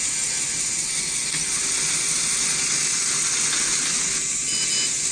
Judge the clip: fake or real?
real